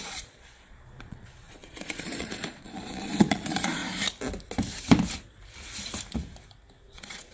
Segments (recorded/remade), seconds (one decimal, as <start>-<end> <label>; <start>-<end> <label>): 0.0-3.8 remade; 3.8-6.8 recorded; 6.8-7.3 remade

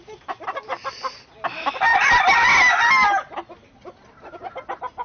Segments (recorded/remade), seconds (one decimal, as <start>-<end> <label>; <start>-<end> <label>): 0.0-5.0 recorded

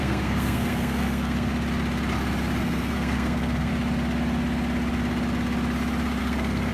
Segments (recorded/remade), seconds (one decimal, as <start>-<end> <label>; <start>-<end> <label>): 0.0-1.5 remade; 1.5-2.6 recorded; 2.6-3.7 remade; 3.7-6.2 recorded; 6.2-6.7 remade

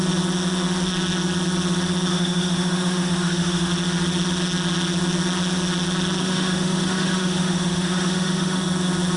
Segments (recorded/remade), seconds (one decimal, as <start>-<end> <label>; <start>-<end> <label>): 0.0-2.1 recorded; 2.1-3.7 remade; 3.7-6.2 recorded; 6.2-8.6 remade; 8.6-9.2 recorded

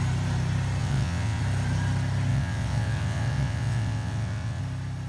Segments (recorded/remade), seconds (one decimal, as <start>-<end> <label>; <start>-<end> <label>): 0.0-0.8 recorded; 0.8-1.4 remade; 1.4-2.3 recorded; 2.3-4.6 remade; 4.6-5.1 recorded

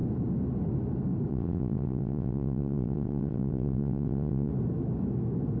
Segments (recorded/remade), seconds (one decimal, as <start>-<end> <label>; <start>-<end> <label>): 0.0-1.3 recorded; 1.3-4.5 remade; 4.5-5.6 recorded